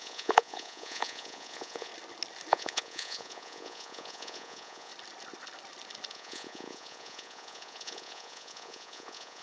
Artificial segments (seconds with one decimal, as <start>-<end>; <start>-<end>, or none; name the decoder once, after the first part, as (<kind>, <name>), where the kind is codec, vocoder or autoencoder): 0.0-1.9 (vocoder, Vocos); 2.5-4.9; 6.1-9.4

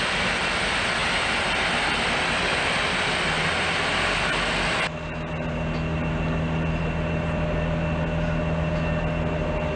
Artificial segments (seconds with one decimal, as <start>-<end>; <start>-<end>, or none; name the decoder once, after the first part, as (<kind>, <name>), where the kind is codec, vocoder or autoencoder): none